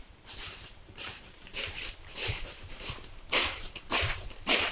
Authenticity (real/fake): fake